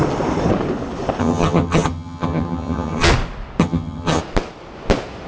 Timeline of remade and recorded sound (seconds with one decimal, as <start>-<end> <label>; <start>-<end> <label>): 0.0-1.2 recorded; 1.2-3.1 remade; 3.1-3.6 recorded; 3.6-4.2 remade; 4.2-5.3 recorded